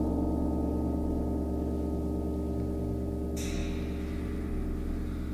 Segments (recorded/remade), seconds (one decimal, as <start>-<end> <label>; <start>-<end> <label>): 0.0-5.3 recorded

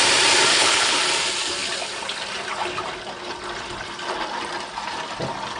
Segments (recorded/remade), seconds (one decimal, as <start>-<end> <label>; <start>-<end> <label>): 0.0-0.5 recorded; 0.5-1.0 remade; 1.0-5.6 recorded